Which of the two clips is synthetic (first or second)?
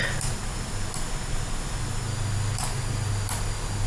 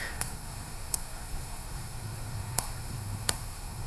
second